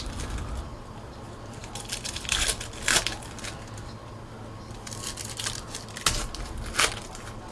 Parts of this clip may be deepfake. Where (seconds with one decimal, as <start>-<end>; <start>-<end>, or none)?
none